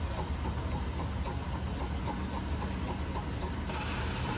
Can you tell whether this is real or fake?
real